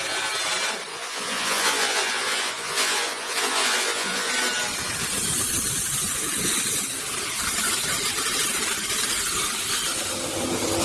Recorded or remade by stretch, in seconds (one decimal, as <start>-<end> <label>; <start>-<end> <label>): 0.0-0.9 recorded; 0.9-4.3 remade; 4.3-10.8 recorded